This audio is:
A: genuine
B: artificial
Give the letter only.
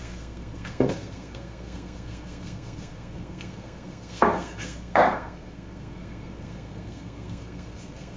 B